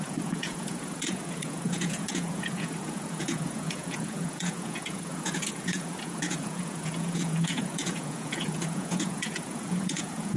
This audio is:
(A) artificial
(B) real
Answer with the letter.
A